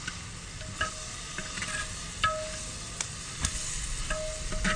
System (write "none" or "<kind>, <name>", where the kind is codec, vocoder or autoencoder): none